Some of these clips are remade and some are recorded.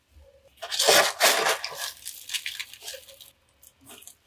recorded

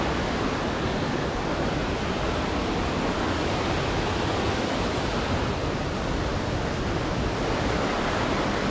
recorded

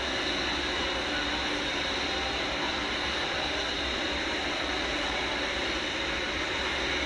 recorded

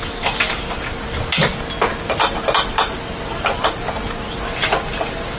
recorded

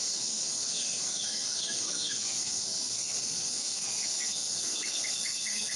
remade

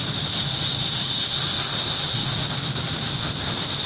recorded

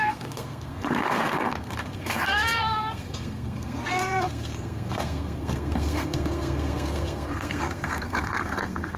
remade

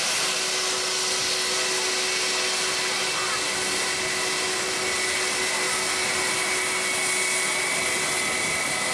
recorded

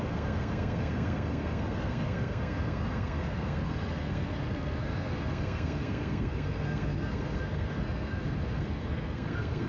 remade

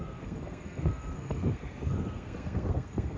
remade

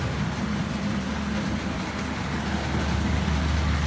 recorded